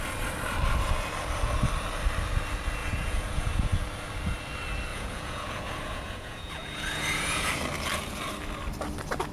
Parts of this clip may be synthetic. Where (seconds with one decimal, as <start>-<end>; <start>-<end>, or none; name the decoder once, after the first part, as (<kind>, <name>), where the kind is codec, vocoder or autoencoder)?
2.8-3.7 (vocoder, Vocos); 4.9-7.5